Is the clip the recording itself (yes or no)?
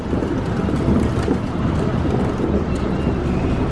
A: yes